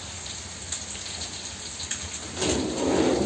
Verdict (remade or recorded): recorded